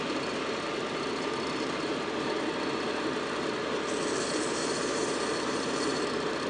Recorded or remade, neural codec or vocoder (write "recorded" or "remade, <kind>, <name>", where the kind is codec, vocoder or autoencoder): recorded